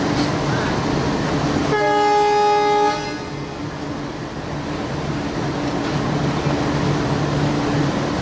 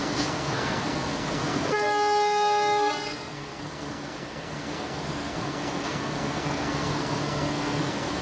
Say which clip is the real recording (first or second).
first